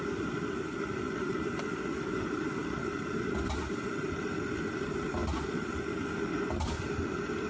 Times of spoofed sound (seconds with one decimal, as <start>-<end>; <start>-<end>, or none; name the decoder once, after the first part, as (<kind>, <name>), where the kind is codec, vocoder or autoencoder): 0.0-5.2 (vocoder, BigVGAN v2); 6.8-7.5